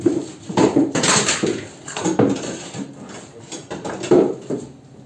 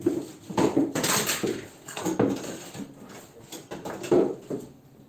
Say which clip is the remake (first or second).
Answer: first